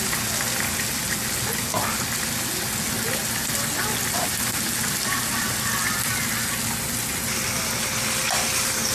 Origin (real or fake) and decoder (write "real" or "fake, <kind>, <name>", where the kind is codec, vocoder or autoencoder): real